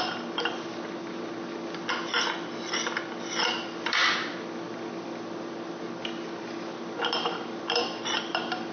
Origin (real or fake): real